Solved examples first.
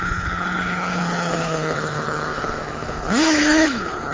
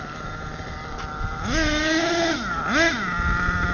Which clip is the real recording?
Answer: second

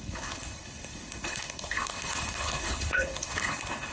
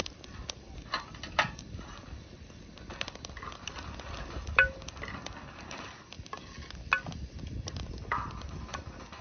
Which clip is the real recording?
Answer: second